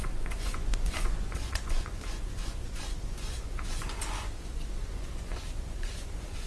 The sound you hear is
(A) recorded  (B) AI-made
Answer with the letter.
B